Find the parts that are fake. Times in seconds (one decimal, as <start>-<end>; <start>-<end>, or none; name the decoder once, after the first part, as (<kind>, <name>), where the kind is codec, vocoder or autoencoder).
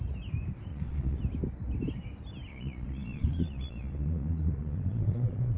0.7-1.2 (vocoder, Vocos); 2.5-5.6